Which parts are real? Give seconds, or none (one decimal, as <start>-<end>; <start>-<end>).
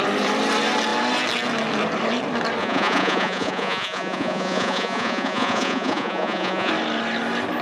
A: 0.0-2.6; 6.7-7.6